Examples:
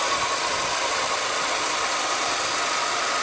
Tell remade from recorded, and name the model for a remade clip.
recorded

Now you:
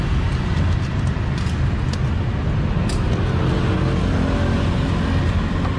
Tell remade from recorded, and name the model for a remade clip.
recorded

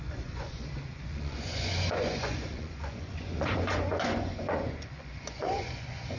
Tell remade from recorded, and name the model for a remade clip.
remade, vocoder, Vocos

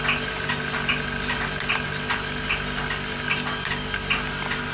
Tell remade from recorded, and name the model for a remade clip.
recorded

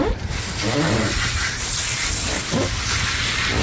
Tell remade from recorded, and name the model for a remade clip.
recorded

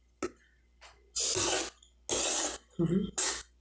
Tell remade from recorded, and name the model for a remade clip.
recorded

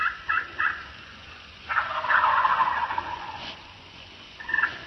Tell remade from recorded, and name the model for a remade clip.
remade, vocoder, Vocos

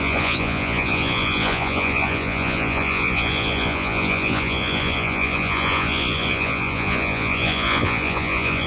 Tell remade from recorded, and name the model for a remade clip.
remade, vocoder, Vocos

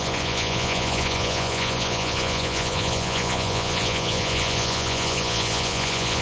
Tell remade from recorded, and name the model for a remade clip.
remade, vocoder, Vocos